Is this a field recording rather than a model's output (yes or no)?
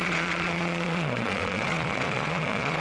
no